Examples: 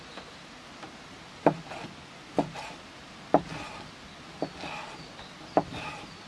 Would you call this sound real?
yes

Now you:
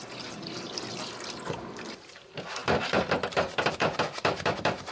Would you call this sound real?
no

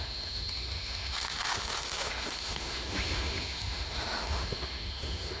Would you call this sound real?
no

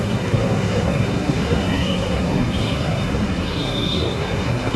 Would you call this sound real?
no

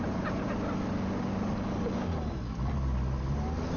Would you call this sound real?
yes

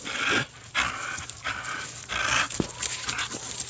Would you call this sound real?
yes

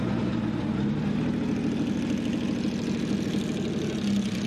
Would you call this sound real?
yes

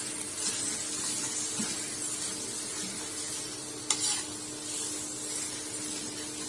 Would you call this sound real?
yes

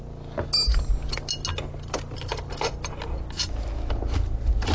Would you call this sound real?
yes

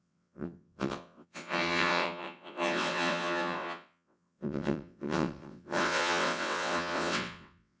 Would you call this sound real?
no